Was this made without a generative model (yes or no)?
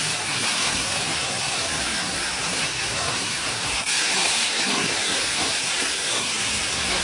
no